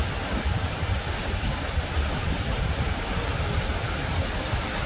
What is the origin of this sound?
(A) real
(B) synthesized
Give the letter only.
A